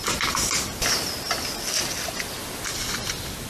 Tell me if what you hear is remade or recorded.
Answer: recorded